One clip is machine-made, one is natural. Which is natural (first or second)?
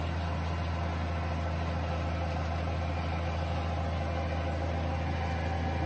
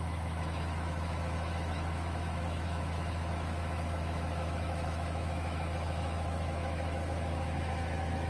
first